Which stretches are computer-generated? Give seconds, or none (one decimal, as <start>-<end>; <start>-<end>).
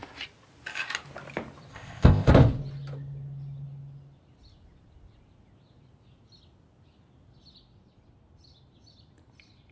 1.7-2.3